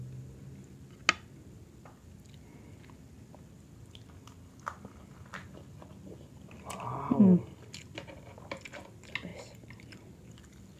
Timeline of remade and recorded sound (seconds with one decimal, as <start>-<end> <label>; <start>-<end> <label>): 0.0-10.8 recorded